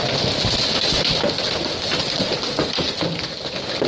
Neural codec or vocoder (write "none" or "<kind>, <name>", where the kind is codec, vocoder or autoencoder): none